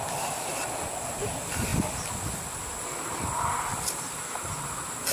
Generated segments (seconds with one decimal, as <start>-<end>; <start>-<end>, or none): none